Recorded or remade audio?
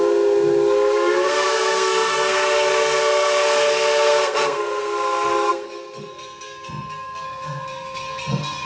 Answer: remade